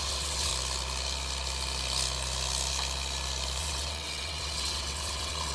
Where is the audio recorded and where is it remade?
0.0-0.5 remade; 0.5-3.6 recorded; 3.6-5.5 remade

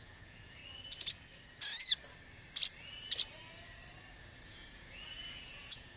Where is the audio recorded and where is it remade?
0.0-0.6 remade; 0.6-4.2 recorded; 4.2-6.0 remade

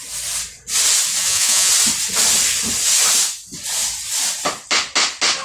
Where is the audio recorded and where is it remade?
0.0-1.2 recorded; 1.2-1.7 remade; 1.7-5.4 recorded

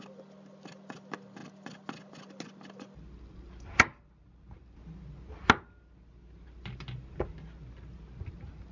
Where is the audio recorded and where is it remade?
0.0-8.7 recorded

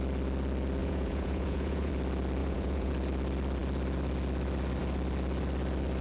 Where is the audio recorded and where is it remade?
0.0-0.8 recorded; 0.8-1.9 remade; 1.9-2.4 recorded; 2.4-2.9 remade; 2.9-6.0 recorded

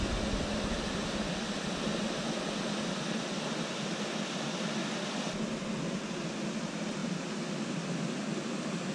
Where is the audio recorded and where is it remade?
0.0-8.9 recorded

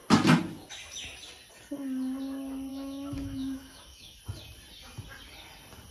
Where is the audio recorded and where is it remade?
0.0-2.7 recorded; 2.7-4.2 remade; 4.2-5.9 recorded

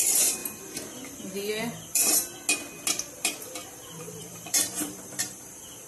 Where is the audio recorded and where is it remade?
0.0-2.0 remade; 2.0-4.0 recorded; 4.0-5.9 remade